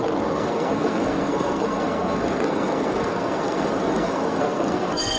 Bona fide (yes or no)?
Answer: no